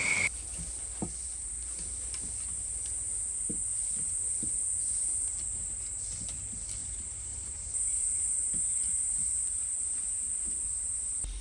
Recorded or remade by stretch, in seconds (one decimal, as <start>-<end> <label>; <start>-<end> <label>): 0.0-3.7 recorded; 3.7-4.3 remade; 4.3-6.8 recorded; 6.8-11.4 remade